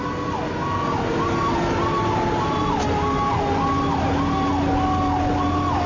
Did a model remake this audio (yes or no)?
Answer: no